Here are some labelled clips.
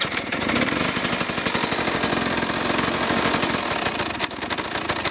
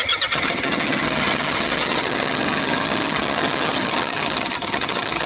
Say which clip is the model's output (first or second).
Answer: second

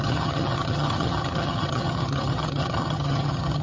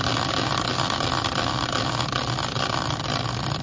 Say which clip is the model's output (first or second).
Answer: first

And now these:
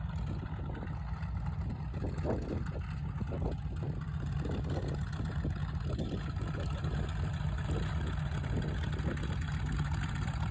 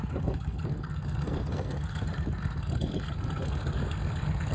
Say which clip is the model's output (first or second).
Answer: second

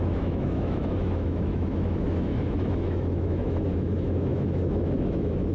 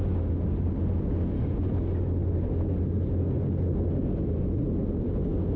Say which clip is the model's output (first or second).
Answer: first